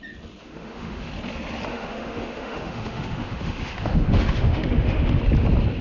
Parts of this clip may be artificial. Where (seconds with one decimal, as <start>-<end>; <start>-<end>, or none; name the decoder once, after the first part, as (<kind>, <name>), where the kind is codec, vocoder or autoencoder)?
0.4-1.1 (autoencoder, DAC-VAE); 1.7-5.2